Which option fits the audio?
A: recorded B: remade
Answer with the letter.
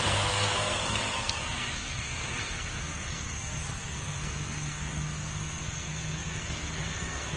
B